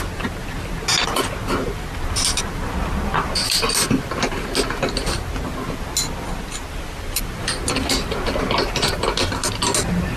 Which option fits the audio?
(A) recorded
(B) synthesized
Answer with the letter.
A